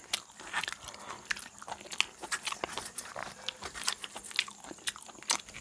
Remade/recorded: recorded